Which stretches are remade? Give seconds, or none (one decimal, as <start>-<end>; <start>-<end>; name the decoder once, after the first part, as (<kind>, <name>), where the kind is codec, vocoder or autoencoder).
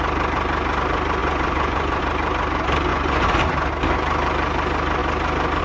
1.2-2.0 (vocoder, Vocos); 2.9-3.4